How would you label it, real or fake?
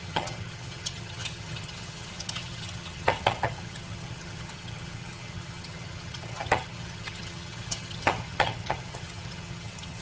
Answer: fake